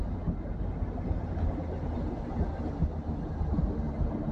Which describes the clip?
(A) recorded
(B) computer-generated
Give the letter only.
A